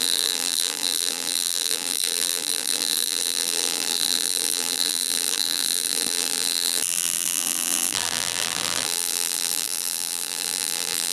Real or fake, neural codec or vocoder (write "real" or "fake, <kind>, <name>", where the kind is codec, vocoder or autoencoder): fake, vocoder, BigVGAN v2